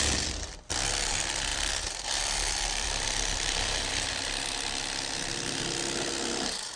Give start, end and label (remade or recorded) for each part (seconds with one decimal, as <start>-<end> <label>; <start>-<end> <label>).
0.0-1.5 recorded; 1.5-5.6 remade; 5.6-6.8 recorded